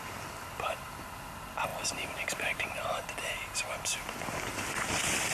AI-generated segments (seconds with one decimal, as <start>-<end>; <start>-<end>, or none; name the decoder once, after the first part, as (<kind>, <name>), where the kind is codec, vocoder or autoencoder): none